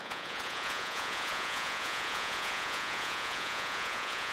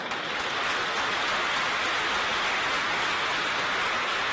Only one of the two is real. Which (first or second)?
second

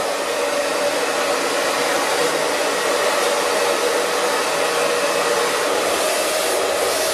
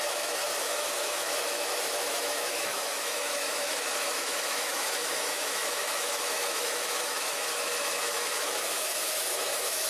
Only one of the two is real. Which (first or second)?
first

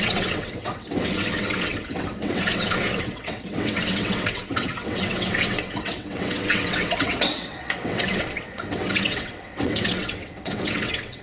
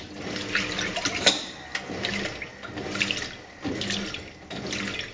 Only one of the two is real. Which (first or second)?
second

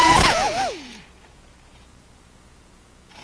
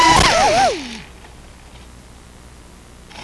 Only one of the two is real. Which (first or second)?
second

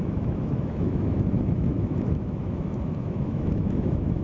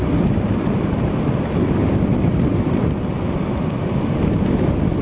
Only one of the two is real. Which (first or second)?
second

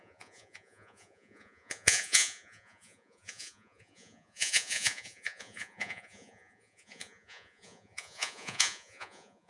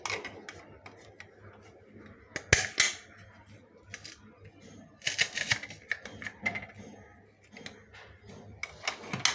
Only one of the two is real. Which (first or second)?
second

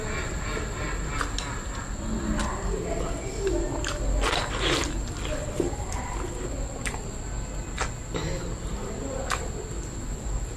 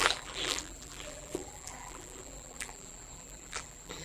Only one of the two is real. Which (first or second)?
first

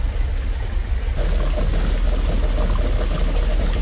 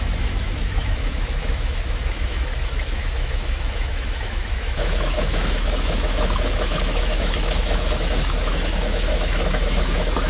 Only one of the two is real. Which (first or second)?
first